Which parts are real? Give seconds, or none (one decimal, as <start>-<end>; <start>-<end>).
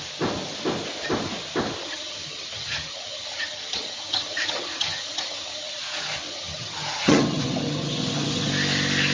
0.0-1.8; 5.8-6.3; 8.5-9.1